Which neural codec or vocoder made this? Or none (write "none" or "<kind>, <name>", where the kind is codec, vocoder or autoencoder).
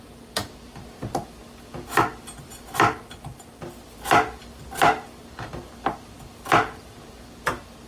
none